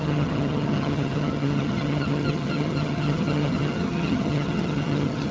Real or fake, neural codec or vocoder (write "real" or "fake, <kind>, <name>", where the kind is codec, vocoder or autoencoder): fake, vocoder, HiFi-GAN